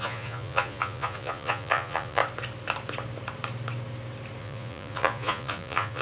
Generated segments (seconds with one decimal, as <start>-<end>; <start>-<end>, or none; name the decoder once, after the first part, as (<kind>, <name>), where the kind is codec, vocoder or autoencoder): 0.0-2.2 (vocoder, Vocos); 4.4-6.0